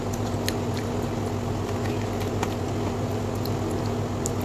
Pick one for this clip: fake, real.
real